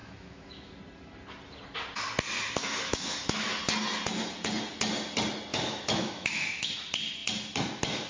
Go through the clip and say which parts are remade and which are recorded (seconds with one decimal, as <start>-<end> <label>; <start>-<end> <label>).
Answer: 0.0-0.7 remade; 0.7-2.6 recorded; 2.6-3.5 remade; 3.5-5.5 recorded; 5.5-6.7 remade; 6.7-8.1 recorded